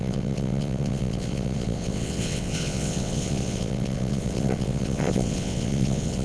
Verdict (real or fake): fake